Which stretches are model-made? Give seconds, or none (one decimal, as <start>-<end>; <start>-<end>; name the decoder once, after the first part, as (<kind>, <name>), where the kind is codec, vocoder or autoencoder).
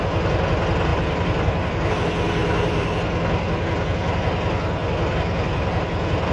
0.9-1.9 (vocoder, BigVGAN v2); 2.4-3.0; 4.8-6.3